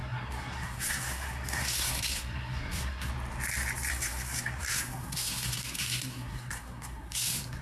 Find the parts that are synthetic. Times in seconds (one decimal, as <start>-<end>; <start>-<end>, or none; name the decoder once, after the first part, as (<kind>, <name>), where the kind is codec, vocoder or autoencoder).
0.0-3.1 (codec, SNAC); 3.9-7.6